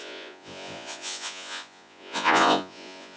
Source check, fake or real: fake